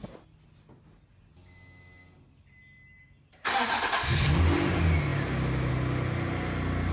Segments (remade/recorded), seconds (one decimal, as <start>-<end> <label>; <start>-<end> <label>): 0.0-6.9 recorded